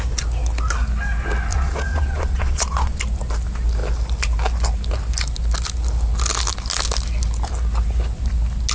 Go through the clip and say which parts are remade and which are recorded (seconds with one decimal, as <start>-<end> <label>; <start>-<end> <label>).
0.0-1.5 recorded; 1.5-3.0 remade; 3.0-8.7 recorded